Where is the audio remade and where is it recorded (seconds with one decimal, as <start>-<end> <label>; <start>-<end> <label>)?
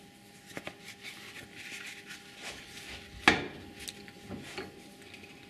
0.0-5.5 recorded